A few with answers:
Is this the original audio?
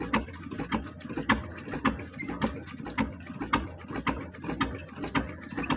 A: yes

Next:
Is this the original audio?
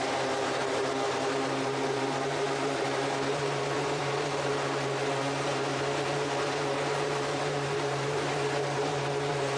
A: no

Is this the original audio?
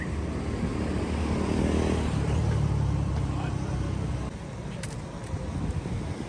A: yes